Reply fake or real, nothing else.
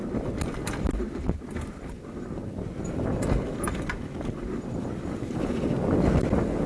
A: real